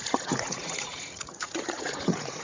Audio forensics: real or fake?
fake